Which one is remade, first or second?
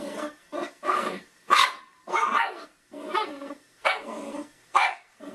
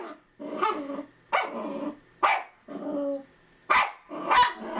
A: first